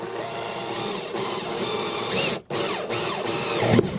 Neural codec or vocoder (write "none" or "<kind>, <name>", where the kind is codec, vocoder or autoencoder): vocoder, BigVGAN v2